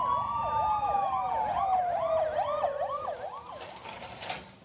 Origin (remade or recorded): recorded